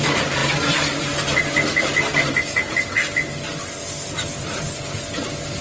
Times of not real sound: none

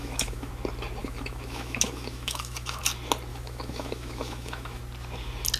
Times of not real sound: 0.0-0.5 (autoencoder, DAC-VAE); 1.0-2.8; 3.3-4.8

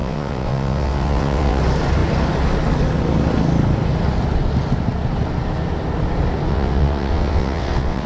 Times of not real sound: 0.0-1.6 (vocoder, WaveNeXt); 6.5-8.1

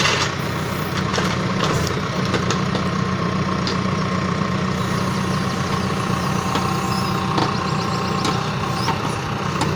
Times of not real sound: 1.1-6.3 (vocoder, BigVGAN v2); 7.4-8.5

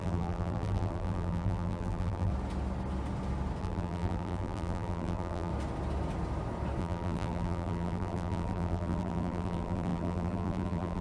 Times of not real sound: 0.0-2.3 (vocoder, BigVGAN v2); 3.6-5.5; 6.8-11.0